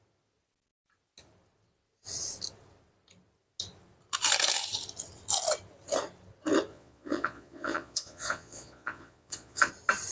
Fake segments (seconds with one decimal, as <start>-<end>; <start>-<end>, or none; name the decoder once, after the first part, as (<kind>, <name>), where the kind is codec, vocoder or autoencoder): 6.7-9.7 (vocoder, Vocos)